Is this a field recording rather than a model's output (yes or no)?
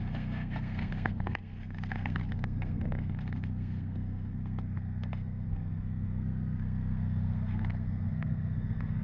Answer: no